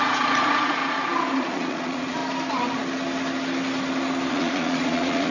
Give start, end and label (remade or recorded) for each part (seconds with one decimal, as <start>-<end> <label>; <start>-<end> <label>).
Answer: 0.0-0.8 remade; 0.8-1.4 recorded; 1.4-2.2 remade; 2.2-4.3 recorded; 4.3-5.3 remade